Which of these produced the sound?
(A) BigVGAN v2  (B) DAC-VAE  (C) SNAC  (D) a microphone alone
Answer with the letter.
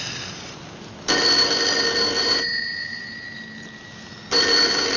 D